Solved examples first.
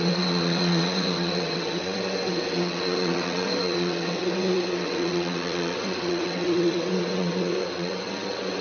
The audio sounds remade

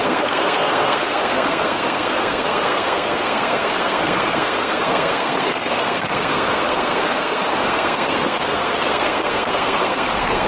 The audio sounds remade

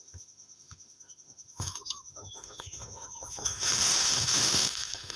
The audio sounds remade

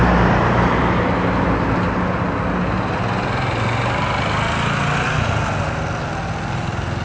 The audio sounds recorded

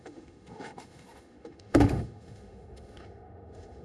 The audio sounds remade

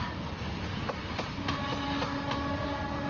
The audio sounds recorded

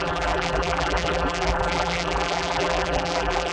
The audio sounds remade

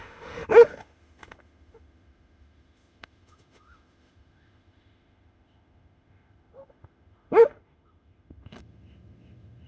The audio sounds remade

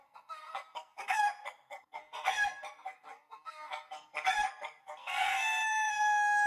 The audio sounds remade